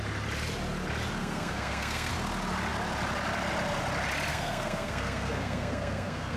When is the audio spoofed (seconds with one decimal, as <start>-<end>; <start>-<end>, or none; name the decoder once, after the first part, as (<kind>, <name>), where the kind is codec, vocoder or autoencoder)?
1.2-2.1 (codec, SNAC); 4.3-6.4